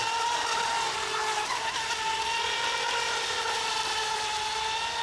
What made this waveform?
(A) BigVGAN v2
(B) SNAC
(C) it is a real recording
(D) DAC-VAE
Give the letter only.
C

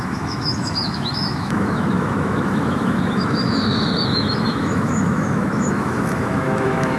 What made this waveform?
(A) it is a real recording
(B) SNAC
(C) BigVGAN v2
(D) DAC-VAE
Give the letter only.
D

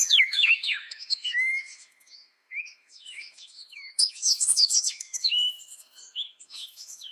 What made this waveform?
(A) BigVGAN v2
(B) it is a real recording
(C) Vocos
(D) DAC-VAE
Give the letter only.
D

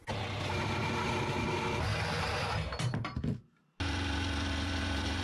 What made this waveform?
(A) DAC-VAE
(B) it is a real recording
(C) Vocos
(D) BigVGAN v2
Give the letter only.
B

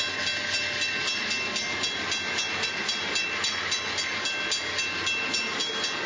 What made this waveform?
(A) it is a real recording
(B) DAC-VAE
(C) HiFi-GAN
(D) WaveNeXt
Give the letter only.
A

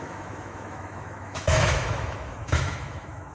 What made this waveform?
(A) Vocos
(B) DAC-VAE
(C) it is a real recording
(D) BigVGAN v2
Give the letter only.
B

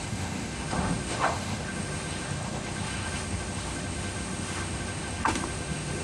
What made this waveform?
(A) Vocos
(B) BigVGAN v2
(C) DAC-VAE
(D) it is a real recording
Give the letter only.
C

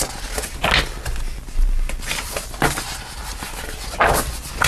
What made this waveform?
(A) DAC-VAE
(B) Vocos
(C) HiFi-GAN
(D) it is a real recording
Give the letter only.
D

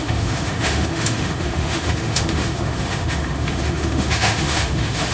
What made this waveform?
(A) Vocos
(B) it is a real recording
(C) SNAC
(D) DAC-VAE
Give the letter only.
D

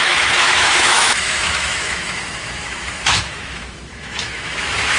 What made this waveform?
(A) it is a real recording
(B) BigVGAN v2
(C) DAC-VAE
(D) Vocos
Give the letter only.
C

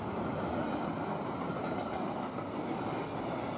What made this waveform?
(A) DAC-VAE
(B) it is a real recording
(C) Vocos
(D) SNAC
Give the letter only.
B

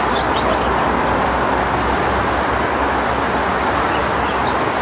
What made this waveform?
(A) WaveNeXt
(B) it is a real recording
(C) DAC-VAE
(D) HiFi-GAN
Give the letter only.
B